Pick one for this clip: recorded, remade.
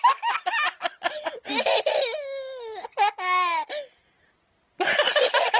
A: recorded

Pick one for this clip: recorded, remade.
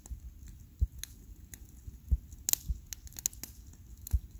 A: recorded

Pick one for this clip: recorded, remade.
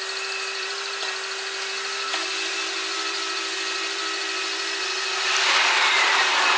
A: recorded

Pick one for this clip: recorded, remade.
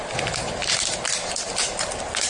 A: recorded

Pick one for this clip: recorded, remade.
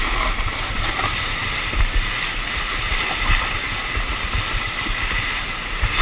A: recorded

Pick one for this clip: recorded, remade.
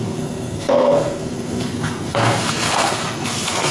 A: remade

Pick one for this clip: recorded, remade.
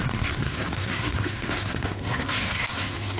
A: remade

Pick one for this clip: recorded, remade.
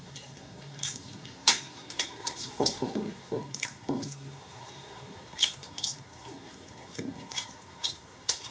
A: remade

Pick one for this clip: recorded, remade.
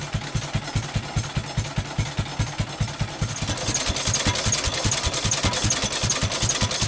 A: recorded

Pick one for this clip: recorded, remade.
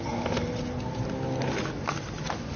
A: recorded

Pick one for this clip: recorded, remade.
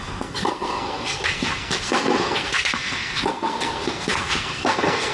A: remade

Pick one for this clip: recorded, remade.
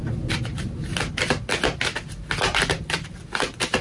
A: recorded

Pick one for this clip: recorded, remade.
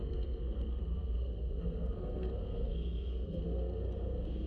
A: remade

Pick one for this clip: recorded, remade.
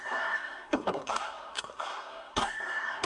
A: remade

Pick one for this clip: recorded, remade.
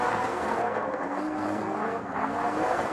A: remade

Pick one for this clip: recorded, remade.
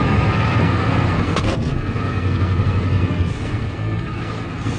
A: remade